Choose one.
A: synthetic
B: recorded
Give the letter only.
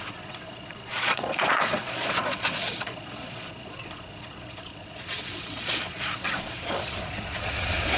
A